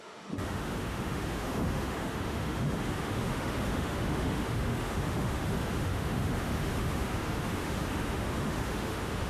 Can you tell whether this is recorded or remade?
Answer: remade